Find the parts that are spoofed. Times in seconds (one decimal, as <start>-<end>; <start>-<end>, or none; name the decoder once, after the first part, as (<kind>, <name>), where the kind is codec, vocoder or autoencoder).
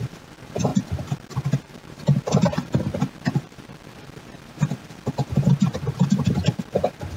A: 0.0-7.2 (vocoder, BigVGAN v2)